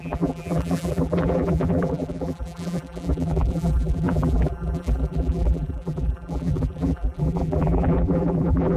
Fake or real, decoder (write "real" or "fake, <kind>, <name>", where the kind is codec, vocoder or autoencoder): fake, vocoder, BigVGAN v2